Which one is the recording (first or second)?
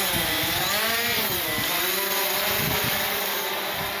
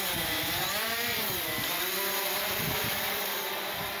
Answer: first